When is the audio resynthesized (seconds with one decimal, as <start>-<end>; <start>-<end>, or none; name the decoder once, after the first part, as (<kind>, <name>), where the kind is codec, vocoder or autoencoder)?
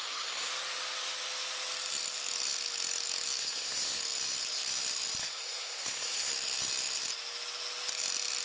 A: 0.0-0.5 (codec, SNAC); 3.4-4.0; 5.2-6.3